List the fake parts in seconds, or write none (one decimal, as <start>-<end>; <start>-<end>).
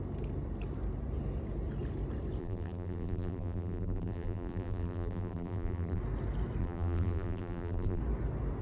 2.4-6.0; 6.6-8.0